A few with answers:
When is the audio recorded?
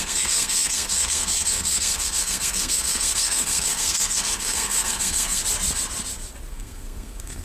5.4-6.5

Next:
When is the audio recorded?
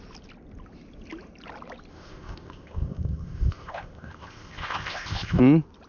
0.0-1.9; 5.4-5.9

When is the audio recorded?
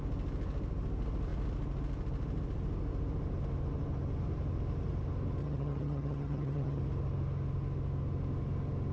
0.0-5.4; 6.8-8.9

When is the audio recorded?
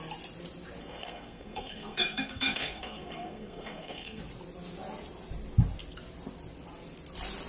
0.0-0.8; 4.2-7.5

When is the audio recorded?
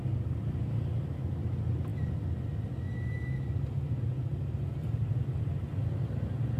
0.0-6.6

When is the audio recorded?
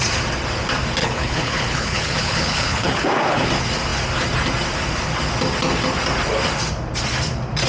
0.0-1.0; 3.5-7.7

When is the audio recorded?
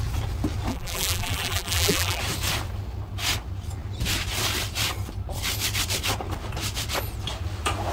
0.0-0.7; 2.2-7.9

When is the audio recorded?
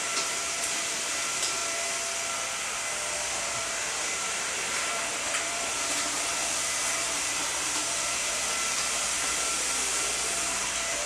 1.6-3.5